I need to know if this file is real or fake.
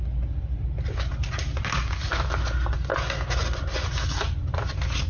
real